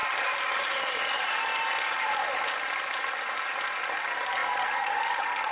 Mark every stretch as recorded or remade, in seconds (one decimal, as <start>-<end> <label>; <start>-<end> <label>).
0.0-5.5 recorded